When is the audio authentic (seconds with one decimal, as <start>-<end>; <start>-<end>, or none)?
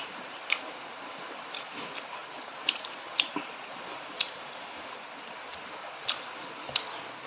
none